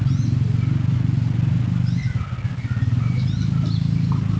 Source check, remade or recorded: recorded